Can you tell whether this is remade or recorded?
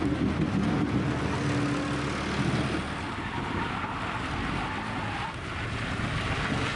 recorded